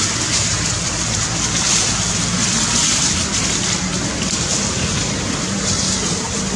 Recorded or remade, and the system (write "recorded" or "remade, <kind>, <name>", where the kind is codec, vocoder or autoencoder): remade, vocoder, BigVGAN v2